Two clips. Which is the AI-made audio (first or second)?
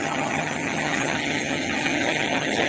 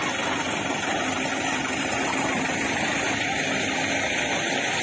first